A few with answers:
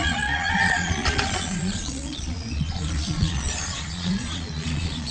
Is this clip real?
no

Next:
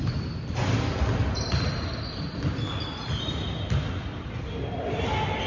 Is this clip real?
yes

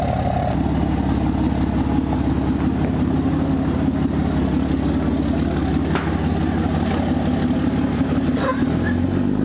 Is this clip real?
yes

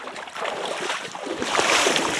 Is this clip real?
no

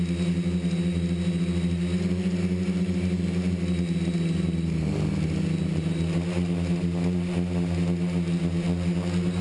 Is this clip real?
yes